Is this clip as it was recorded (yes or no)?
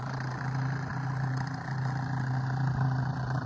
yes